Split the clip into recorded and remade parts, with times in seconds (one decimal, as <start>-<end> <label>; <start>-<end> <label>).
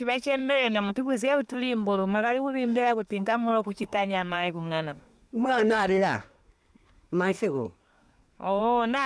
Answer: 0.0-9.1 remade